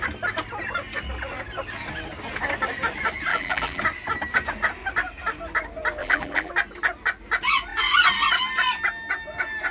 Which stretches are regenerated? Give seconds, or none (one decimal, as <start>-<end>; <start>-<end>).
3.3-3.8; 6.0-6.5